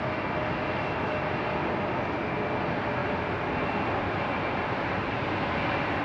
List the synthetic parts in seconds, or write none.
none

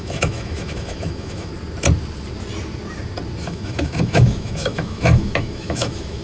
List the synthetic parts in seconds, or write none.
0.0-1.5 (autoencoder, DAC-VAE); 3.4-6.2

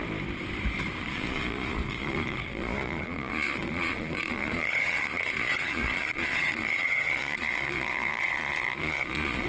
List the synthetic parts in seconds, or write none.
0.9-9.5 (vocoder, Vocos)

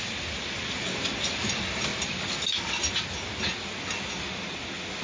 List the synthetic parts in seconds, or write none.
none